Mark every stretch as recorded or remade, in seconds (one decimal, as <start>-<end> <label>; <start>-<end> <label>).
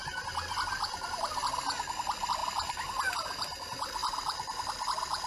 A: 0.0-5.3 recorded